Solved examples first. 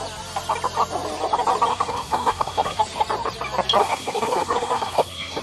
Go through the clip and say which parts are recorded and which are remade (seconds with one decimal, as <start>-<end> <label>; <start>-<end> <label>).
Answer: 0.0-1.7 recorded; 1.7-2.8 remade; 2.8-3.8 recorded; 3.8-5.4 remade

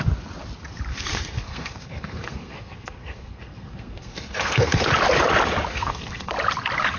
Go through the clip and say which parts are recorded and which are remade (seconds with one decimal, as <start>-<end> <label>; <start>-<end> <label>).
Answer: 0.0-0.9 recorded; 0.9-4.9 remade; 4.9-5.7 recorded; 5.7-6.3 remade; 6.3-7.0 recorded

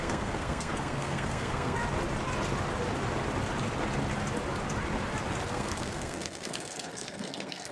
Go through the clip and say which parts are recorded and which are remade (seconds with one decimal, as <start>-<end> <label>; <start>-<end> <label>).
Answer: 0.0-1.8 remade; 1.8-5.5 recorded; 5.5-7.7 remade

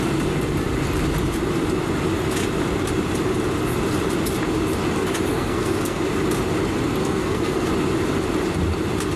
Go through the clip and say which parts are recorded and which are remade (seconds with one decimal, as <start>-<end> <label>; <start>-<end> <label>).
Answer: 0.0-5.3 recorded; 5.3-6.0 remade; 6.0-7.0 recorded; 7.0-7.7 remade; 7.7-9.2 recorded

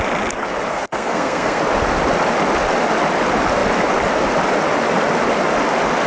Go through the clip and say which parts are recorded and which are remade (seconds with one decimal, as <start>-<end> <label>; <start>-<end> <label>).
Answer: 0.0-0.7 recorded; 0.7-1.6 remade; 1.6-6.1 recorded

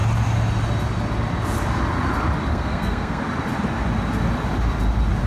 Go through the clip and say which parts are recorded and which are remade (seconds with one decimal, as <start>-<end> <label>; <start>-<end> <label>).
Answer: 0.0-2.5 recorded; 2.5-3.2 remade; 3.2-5.3 recorded